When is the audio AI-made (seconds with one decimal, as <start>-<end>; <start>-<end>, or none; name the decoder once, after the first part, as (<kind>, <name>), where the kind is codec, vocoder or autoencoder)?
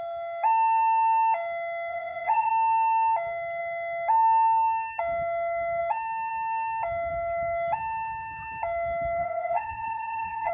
1.9-2.5 (vocoder, Vocos); 9.2-10.5